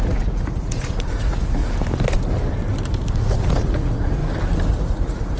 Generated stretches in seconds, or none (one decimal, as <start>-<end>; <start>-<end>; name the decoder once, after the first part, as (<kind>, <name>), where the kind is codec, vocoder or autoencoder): 0.0-1.6 (vocoder, Vocos); 3.1-4.2; 4.7-5.4

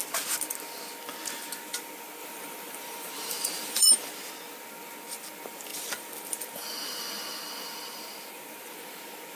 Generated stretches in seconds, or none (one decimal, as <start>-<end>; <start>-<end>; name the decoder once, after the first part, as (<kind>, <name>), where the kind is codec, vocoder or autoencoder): 2.2-4.1 (vocoder, BigVGAN v2); 5.7-9.0

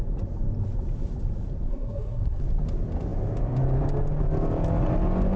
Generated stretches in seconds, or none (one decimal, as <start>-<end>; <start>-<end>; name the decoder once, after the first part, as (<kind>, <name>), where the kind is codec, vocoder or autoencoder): 1.7-2.4 (codec, SNAC)

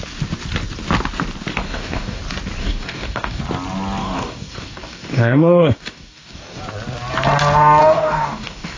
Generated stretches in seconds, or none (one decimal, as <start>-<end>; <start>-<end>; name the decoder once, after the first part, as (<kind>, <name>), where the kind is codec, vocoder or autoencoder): 1.5-2.2 (codec, DAC); 2.6-3.4; 4.0-6.6; 7.8-8.8

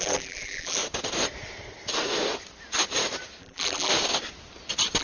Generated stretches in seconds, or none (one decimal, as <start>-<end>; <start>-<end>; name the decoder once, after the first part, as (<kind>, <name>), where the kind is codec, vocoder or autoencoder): 0.0-0.8 (vocoder, BigVGAN v2); 3.4-3.9

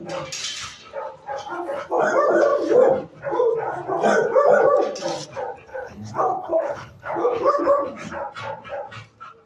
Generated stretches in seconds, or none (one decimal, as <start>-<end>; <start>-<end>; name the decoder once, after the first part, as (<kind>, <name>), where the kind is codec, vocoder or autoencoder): 5.7-7.6 (codec, HILCodec)

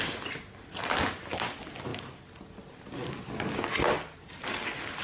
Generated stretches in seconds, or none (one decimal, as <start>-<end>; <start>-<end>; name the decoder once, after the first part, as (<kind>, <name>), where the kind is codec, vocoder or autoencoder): none